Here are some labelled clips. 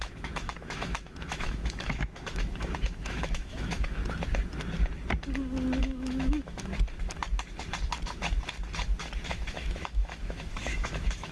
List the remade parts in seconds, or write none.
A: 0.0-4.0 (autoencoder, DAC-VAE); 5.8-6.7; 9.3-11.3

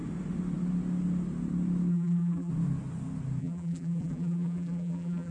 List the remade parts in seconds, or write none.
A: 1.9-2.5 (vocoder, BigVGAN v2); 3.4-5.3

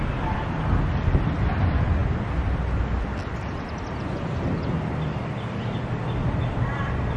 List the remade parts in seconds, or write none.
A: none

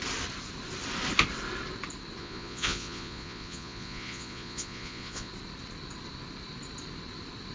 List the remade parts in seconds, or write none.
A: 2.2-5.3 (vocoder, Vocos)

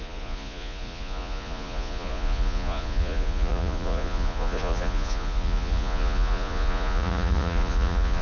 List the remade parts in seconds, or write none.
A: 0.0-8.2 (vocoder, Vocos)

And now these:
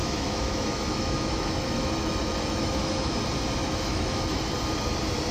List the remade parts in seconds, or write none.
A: 0.0-3.2 (autoencoder, DAC-VAE); 3.6-4.5

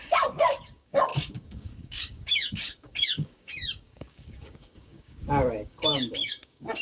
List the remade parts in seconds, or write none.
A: 0.0-6.8 (codec, DAC)

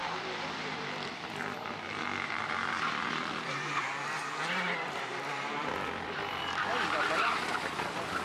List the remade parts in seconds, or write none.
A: 0.6-8.2 (vocoder, BigVGAN v2)